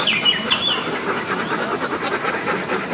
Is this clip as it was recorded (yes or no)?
yes